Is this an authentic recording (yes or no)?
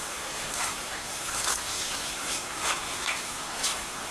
no